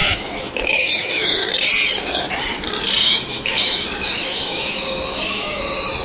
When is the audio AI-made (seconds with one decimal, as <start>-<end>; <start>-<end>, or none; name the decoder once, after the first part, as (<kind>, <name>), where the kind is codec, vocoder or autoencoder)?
0.0-1.5 (autoencoder, DAC-VAE); 3.0-5.6